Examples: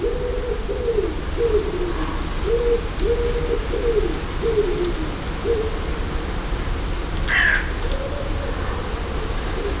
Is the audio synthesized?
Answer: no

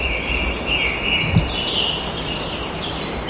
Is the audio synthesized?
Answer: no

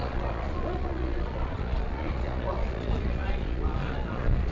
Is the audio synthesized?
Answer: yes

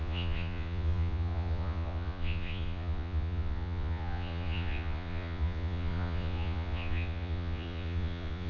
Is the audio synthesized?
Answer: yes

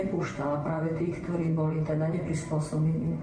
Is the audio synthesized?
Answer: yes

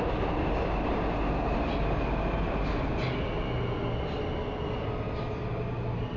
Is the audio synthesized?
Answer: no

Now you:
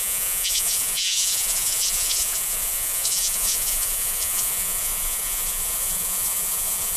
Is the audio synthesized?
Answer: yes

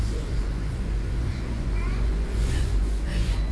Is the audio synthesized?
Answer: yes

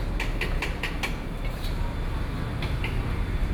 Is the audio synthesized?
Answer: no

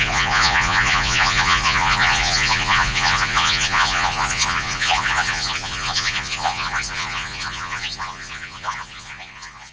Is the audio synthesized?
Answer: yes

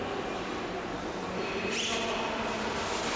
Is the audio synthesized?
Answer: no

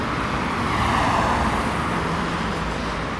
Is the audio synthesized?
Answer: no